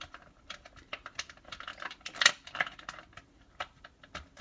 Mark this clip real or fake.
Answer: real